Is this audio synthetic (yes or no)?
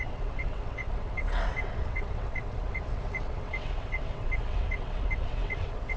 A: yes